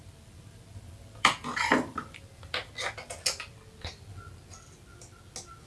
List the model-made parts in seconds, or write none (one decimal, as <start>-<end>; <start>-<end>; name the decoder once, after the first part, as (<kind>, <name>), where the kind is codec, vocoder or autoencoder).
0.0-2.7 (vocoder, BigVGAN v2)